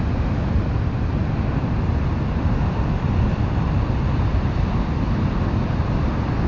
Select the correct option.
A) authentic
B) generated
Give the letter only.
A